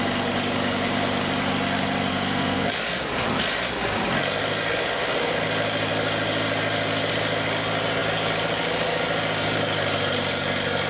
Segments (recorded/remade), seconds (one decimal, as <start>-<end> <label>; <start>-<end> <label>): 0.0-2.1 recorded; 2.1-2.7 remade; 2.7-10.9 recorded